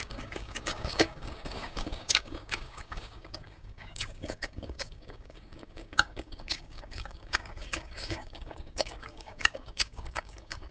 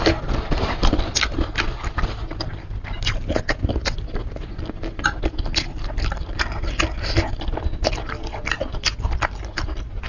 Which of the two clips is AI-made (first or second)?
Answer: first